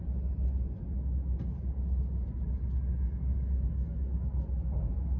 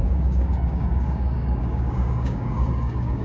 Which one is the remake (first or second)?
second